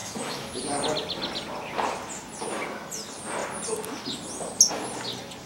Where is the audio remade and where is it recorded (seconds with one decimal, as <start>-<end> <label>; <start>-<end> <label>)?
0.0-0.6 remade; 0.6-5.5 recorded